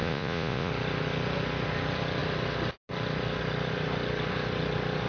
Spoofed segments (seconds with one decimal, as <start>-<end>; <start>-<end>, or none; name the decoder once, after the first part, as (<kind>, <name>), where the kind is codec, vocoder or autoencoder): 0.0-0.7 (vocoder, Vocos)